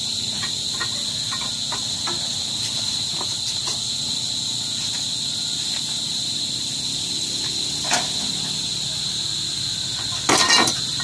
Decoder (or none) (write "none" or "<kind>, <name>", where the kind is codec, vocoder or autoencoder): none